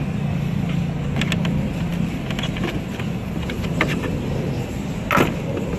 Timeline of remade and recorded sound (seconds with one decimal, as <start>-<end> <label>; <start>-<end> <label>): 0.0-5.8 recorded